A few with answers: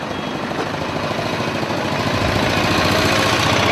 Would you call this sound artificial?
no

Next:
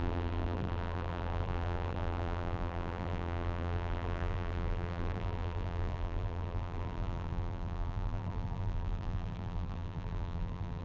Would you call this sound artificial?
yes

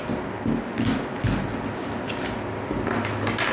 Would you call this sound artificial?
no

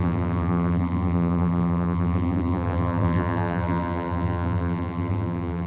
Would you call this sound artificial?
yes